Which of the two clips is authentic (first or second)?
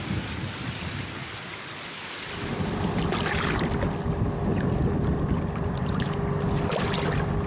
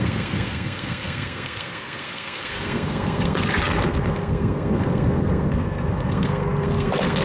first